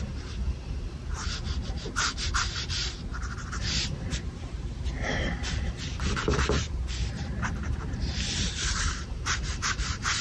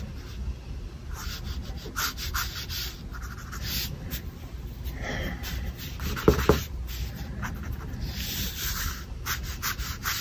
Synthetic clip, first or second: first